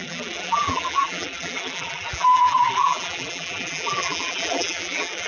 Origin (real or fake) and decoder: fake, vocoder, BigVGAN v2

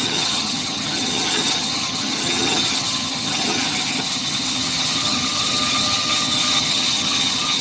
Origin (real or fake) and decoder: fake, vocoder, HiFi-GAN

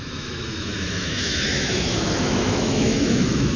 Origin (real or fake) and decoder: fake, autoencoder, DAC-VAE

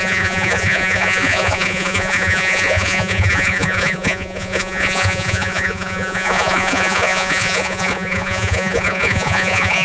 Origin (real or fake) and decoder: fake, vocoder, Vocos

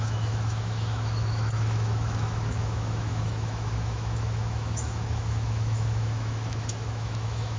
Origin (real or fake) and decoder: fake, autoencoder, DAC-VAE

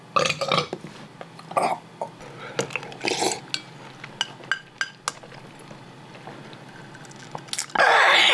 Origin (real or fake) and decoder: real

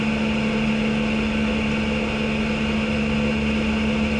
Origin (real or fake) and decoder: real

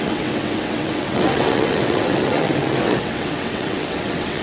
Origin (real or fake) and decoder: fake, vocoder, WaveNeXt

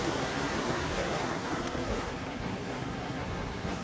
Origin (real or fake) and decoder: fake, codec, SNAC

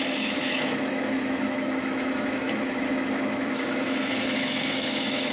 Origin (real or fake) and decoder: fake, autoencoder, DAC-VAE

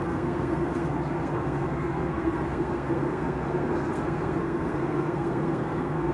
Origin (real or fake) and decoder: fake, codec, SNAC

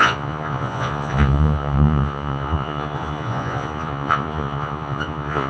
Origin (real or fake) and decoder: fake, vocoder, Vocos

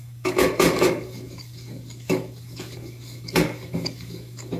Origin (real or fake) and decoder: fake, codec, DAC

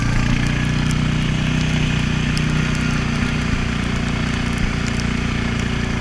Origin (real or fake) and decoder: real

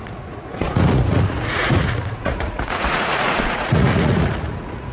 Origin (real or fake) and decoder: fake, vocoder, Vocos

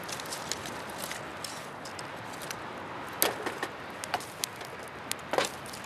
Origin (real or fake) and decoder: real